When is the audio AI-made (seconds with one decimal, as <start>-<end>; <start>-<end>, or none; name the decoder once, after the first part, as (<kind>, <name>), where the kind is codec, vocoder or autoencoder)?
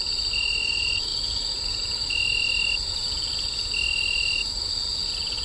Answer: none